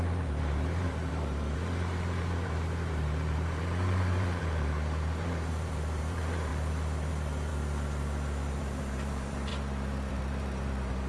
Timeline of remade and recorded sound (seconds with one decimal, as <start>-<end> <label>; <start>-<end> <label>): 0.0-6.5 remade; 6.5-7.1 recorded; 7.1-7.5 remade; 7.5-8.6 recorded; 8.6-9.5 remade; 9.5-10.1 recorded; 10.1-11.1 remade